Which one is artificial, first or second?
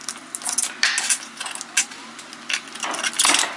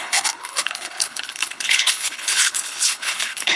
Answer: second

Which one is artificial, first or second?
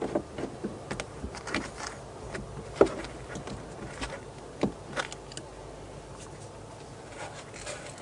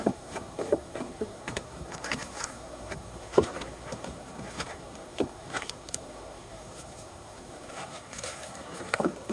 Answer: second